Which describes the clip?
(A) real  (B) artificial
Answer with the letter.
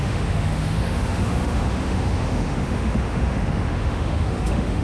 B